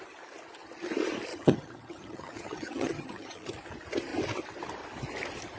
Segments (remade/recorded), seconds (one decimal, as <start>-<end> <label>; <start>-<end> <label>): 0.0-1.3 recorded; 1.3-3.5 remade; 3.5-5.6 recorded